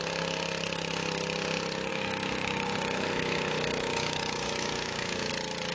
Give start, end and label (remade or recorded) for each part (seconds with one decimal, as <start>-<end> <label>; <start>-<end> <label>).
0.0-1.9 recorded; 1.9-5.3 remade; 5.3-5.7 recorded